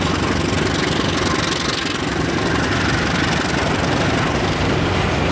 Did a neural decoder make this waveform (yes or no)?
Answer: no